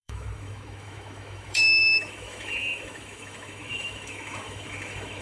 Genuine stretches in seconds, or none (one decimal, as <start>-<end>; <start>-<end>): none